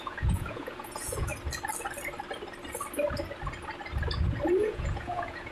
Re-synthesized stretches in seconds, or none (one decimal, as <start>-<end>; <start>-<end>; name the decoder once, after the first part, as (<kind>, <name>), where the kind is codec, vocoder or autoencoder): 0.0-1.3 (vocoder, Vocos); 4.6-5.5